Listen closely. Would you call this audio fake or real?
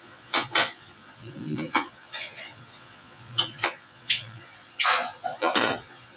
fake